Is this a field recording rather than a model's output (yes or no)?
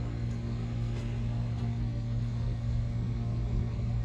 no